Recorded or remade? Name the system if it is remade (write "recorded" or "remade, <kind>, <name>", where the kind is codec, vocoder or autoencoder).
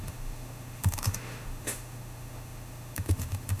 remade, autoencoder, DAC-VAE